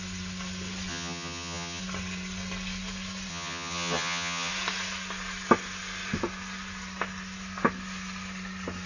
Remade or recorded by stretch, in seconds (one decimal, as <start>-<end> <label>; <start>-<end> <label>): 0.0-0.9 recorded; 0.9-1.8 remade; 1.8-3.3 recorded; 3.3-4.5 remade; 4.5-8.9 recorded

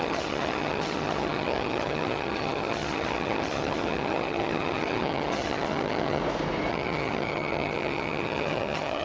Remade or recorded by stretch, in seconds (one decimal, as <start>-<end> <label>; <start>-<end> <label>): 0.0-6.2 remade; 6.2-6.7 recorded; 6.7-9.0 remade

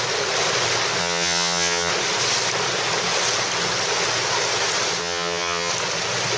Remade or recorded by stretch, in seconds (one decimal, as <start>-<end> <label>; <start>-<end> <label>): 0.0-1.0 recorded; 1.0-1.9 remade; 1.9-5.0 recorded; 5.0-5.7 remade; 5.7-6.4 recorded

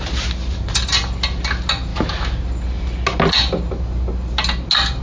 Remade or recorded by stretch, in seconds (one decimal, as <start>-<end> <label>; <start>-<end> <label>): 0.0-5.0 recorded

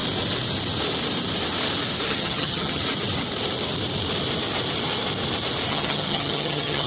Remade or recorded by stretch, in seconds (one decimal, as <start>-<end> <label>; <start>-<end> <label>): 0.0-2.1 recorded; 2.1-2.8 remade; 2.8-5.7 recorded; 5.7-6.9 remade

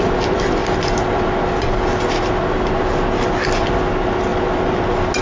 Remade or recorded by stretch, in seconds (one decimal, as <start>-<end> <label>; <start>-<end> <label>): 0.0-5.2 recorded

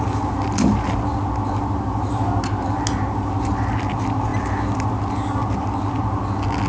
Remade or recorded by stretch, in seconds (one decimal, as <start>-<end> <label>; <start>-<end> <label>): 0.0-6.7 recorded

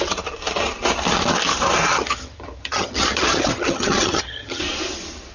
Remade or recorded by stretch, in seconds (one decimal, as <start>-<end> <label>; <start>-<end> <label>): 0.0-1.9 recorded; 1.9-4.6 remade; 4.6-5.3 recorded